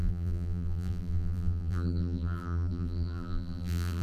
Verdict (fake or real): fake